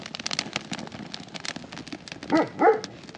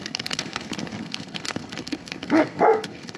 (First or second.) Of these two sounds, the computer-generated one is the second